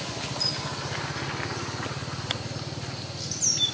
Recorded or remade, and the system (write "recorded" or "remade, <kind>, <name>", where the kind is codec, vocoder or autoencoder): recorded